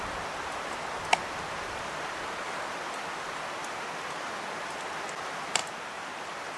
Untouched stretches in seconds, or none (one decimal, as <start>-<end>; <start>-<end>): 0.0-6.6